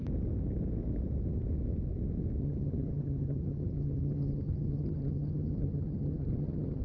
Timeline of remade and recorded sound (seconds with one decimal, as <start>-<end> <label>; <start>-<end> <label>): 0.0-2.4 recorded; 2.4-6.8 remade

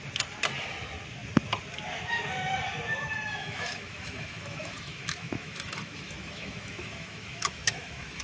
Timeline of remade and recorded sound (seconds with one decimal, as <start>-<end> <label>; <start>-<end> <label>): 0.0-3.4 recorded; 3.4-8.2 remade

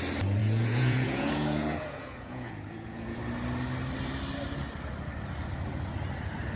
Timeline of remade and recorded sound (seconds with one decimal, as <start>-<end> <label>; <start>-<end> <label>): 0.0-0.4 recorded; 0.4-3.2 remade; 3.2-6.6 recorded

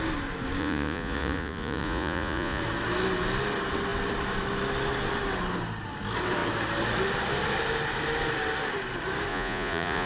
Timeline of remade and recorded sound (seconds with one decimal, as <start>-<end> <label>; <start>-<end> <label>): 0.0-0.6 recorded; 0.6-2.6 remade; 2.6-9.3 recorded; 9.3-10.1 remade